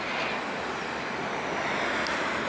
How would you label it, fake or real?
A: real